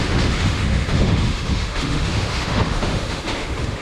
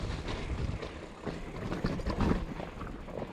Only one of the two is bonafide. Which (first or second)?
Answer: second